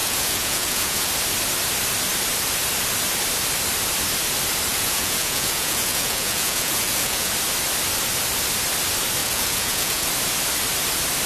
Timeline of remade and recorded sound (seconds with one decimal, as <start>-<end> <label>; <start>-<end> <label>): 0.0-1.1 remade; 1.1-4.7 recorded; 4.7-7.3 remade; 7.3-9.2 recorded; 9.2-10.1 remade; 10.1-11.3 recorded